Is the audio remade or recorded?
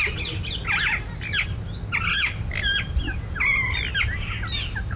recorded